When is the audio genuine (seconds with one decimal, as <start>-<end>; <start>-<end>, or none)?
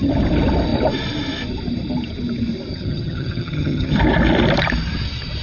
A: 0.0-2.7; 4.0-5.4